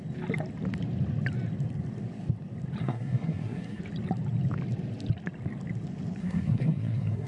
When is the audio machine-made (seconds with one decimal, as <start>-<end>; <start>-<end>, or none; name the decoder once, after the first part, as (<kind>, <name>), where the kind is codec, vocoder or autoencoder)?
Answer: 2.8-3.8 (codec, SNAC); 6.2-7.3